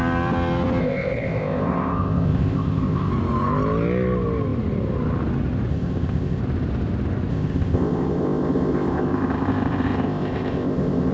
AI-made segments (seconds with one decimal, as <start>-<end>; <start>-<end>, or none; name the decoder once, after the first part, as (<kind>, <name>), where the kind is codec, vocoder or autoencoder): 0.8-3.1 (codec, ZipCodec); 5.7-6.4; 7.3-11.1